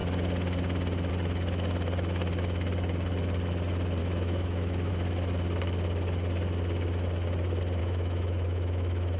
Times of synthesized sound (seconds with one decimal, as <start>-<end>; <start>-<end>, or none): 4.0-4.9; 7.8-9.2